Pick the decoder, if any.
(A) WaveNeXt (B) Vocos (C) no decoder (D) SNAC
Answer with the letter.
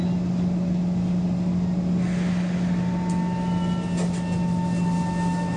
C